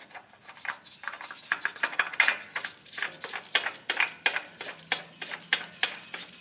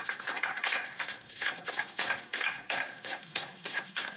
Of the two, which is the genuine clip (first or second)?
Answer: first